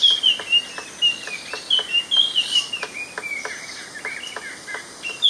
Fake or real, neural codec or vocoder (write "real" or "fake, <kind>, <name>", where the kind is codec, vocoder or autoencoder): real